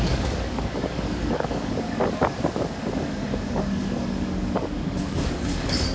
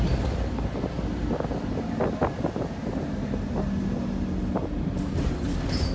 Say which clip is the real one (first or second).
second